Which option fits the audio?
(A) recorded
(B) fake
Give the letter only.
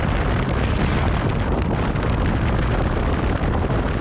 A